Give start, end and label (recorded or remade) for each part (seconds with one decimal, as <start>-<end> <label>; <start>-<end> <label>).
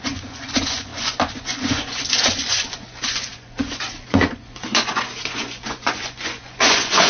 0.0-7.1 remade